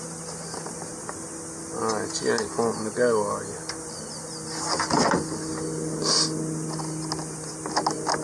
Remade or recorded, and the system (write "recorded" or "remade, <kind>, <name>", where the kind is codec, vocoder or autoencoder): recorded